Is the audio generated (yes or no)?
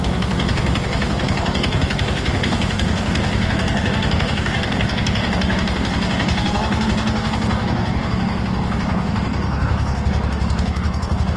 yes